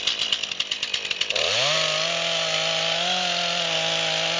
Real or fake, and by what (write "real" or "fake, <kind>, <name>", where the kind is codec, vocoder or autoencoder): real